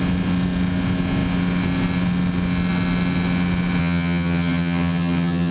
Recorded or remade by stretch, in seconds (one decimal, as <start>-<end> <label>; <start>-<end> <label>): 0.0-3.8 recorded; 3.8-5.5 remade

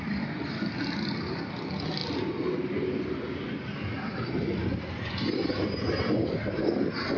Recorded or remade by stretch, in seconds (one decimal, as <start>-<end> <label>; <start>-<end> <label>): 0.0-7.2 recorded

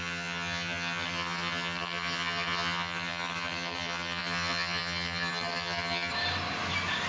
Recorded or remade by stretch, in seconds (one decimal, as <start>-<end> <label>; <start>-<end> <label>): 0.0-6.1 remade; 6.1-7.1 recorded

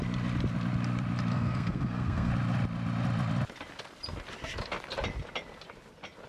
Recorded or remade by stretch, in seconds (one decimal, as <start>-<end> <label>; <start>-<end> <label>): 0.0-1.3 recorded; 1.3-2.3 remade; 2.3-6.3 recorded

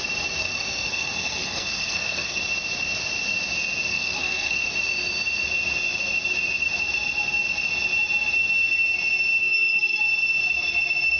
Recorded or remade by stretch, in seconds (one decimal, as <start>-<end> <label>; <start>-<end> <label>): 0.0-0.4 recorded; 0.4-2.4 remade; 2.4-3.9 recorded; 3.9-4.6 remade; 4.6-9.4 recorded; 9.4-10.0 remade; 10.0-11.2 recorded

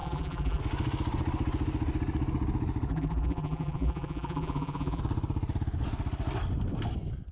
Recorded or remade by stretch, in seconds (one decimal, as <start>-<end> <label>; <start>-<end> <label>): 0.0-0.6 remade; 0.6-2.9 recorded; 2.9-5.0 remade; 5.0-7.3 recorded

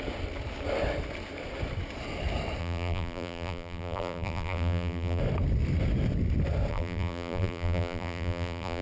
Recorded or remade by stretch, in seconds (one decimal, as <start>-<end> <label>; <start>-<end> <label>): 0.0-2.6 recorded; 2.6-5.2 remade; 5.2-6.7 recorded; 6.7-8.8 remade